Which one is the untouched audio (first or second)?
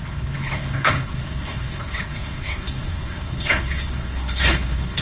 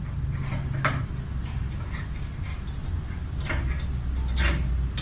second